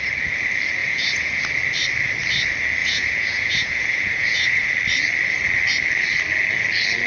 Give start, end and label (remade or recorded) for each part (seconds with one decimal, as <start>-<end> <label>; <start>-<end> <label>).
0.0-0.8 recorded; 0.8-1.4 remade; 1.4-2.8 recorded; 2.8-4.7 remade; 4.7-7.1 recorded